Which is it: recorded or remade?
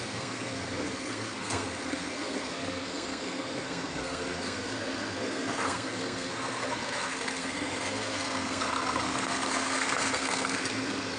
remade